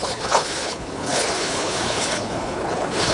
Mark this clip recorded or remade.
remade